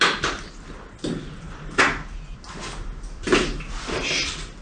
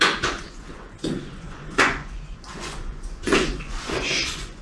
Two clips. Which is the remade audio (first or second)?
second